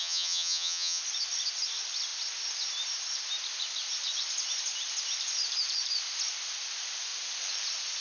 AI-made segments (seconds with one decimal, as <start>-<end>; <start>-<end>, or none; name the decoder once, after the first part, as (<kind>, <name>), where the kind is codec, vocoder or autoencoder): 0.0-1.0 (vocoder, HiFi-GAN)